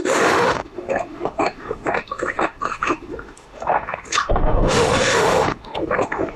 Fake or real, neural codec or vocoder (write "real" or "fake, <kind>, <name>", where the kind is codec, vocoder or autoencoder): fake, autoencoder, DAC-VAE